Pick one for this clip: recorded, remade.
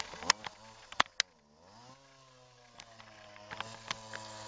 recorded